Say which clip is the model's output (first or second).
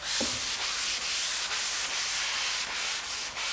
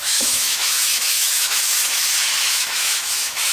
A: second